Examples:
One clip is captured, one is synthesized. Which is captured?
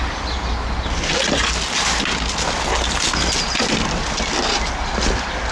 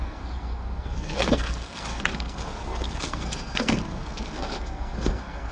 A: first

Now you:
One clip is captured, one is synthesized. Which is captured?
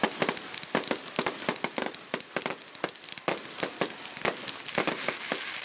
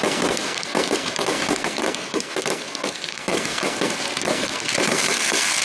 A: first